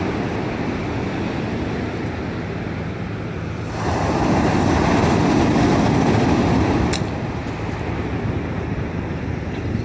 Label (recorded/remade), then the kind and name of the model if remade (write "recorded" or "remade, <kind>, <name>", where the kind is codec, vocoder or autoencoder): remade, vocoder, BigVGAN v2